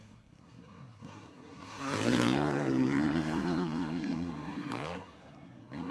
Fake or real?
fake